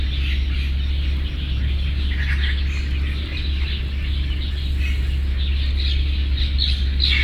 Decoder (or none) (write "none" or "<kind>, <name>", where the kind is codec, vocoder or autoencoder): none